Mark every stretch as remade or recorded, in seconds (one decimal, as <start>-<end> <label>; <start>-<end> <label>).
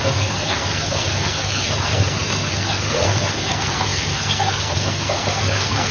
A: 0.0-5.9 remade